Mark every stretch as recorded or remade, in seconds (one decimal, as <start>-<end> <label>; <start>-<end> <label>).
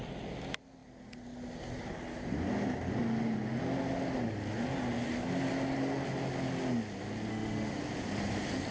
0.0-7.3 recorded; 7.3-7.8 remade; 7.8-8.7 recorded